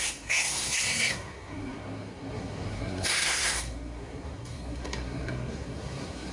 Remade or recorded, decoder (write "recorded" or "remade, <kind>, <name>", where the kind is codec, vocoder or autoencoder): remade, codec, SNAC